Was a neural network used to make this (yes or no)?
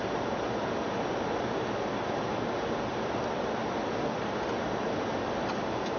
no